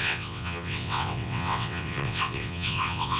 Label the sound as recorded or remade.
remade